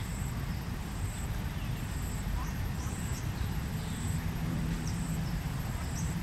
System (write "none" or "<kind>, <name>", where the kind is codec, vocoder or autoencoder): vocoder, BigVGAN v2